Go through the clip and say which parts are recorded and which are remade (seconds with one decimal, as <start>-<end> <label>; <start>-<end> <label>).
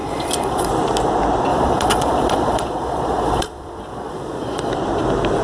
0.0-0.7 remade; 0.7-1.5 recorded; 1.5-4.7 remade; 4.7-5.4 recorded